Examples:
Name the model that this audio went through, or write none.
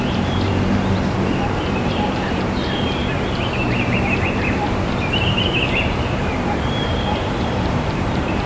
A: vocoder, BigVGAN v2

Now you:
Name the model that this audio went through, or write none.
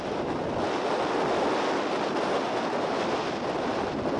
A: none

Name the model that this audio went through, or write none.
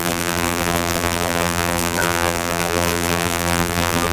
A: vocoder, BigVGAN v2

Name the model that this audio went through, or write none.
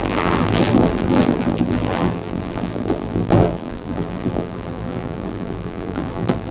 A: vocoder, BigVGAN v2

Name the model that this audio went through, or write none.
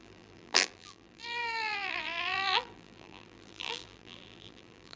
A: vocoder, BigVGAN v2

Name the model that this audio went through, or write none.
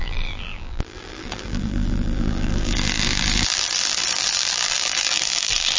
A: vocoder, BigVGAN v2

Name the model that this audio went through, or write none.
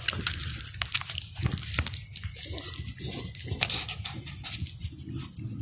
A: none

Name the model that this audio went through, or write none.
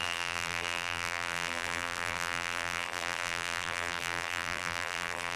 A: vocoder, BigVGAN v2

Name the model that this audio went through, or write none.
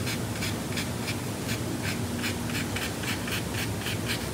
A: none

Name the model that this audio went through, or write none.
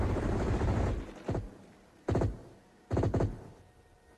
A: none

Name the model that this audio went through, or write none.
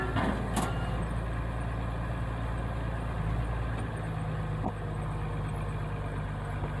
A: none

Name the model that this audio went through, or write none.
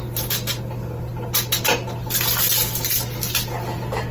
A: none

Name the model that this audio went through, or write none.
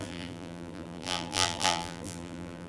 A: vocoder, BigVGAN v2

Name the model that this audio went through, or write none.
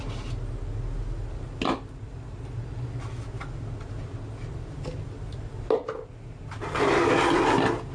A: none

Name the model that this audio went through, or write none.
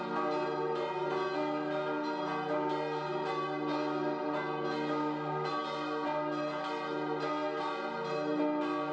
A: none